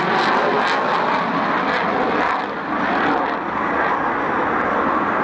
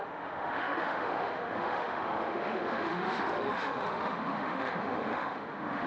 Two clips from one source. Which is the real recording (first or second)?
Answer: first